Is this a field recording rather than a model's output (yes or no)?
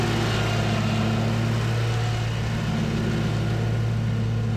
yes